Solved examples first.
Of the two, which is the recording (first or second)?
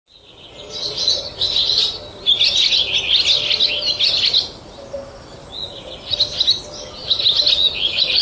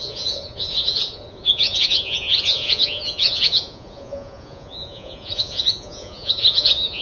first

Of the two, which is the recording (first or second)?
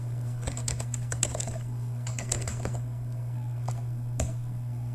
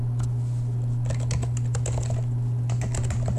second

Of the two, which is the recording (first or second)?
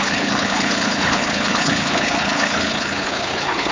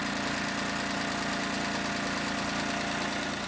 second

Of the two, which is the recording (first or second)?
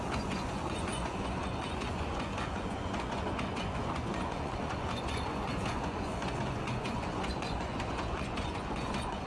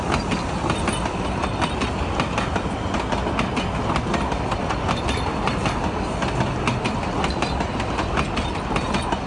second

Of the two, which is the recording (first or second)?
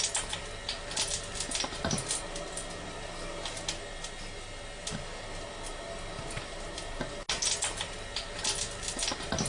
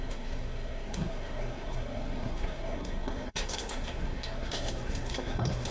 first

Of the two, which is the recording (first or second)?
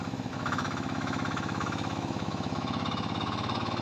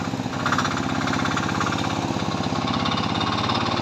second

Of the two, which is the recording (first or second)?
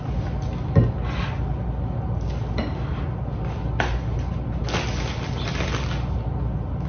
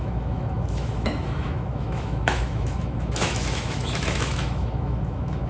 first